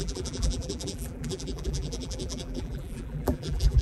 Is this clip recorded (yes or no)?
no